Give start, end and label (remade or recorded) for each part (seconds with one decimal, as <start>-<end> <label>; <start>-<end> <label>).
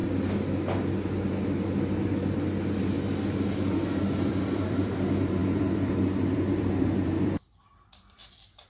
0.0-4.1 recorded; 4.1-8.7 remade